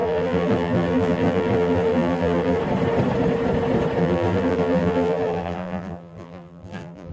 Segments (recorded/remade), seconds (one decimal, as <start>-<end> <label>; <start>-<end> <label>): 0.0-2.6 remade; 2.6-4.0 recorded; 4.0-7.1 remade